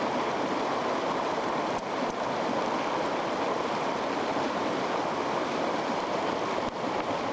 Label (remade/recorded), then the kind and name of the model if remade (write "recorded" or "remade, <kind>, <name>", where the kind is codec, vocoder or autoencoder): recorded